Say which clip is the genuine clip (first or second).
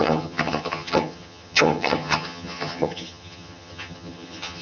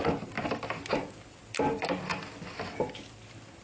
second